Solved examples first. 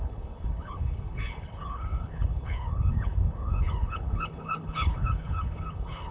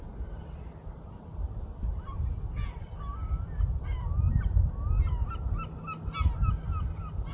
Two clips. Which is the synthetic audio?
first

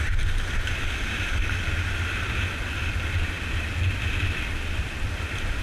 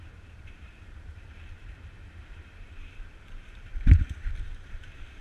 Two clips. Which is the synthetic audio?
second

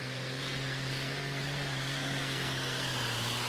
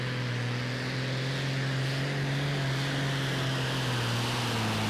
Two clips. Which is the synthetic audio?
first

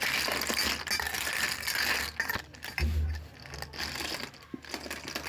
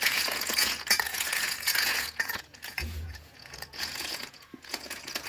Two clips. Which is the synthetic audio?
second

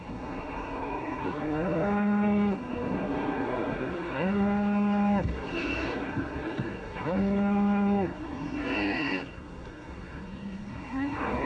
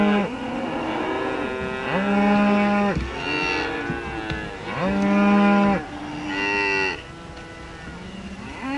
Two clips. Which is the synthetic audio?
first